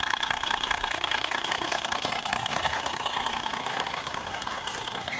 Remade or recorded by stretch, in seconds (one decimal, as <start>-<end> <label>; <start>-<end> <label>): 0.0-5.2 remade